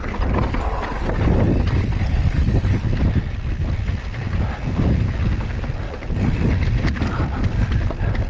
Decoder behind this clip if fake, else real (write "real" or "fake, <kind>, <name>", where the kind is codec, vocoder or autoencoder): real